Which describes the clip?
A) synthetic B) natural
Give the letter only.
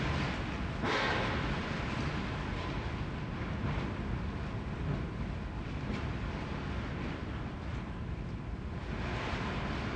B